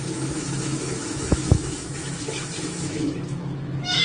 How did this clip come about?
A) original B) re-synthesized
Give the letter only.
B